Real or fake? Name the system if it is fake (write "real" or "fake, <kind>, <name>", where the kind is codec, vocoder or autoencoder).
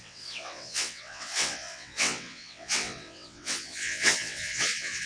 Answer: fake, vocoder, WaveNeXt